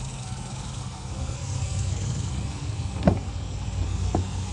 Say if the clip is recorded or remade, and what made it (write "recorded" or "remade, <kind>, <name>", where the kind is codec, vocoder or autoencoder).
remade, codec, SNAC